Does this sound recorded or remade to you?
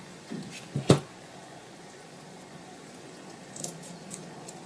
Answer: remade